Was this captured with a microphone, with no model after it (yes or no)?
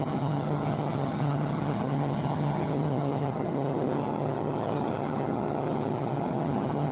no